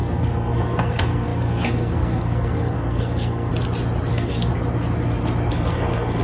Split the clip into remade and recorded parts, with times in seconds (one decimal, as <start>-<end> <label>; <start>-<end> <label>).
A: 0.0-3.5 remade; 3.5-4.1 recorded; 4.1-4.5 remade; 4.5-5.5 recorded; 5.5-6.2 remade